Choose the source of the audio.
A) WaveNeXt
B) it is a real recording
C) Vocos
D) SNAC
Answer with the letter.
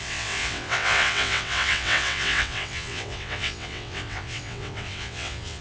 A